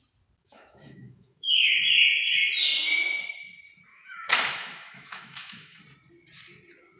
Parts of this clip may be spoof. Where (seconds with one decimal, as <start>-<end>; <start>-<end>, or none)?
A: 0.4-1.7; 3.9-5.8